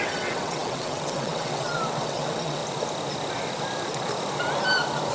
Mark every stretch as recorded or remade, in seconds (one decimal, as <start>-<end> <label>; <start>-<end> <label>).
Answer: 0.0-2.6 remade; 2.6-5.1 recorded